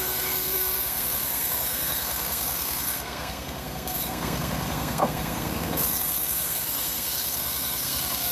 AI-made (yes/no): yes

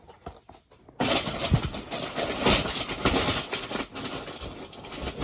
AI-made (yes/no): no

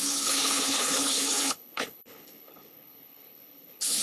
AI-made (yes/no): yes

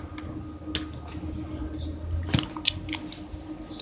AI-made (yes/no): no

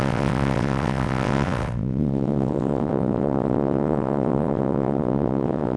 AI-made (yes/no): yes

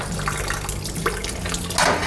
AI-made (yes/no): no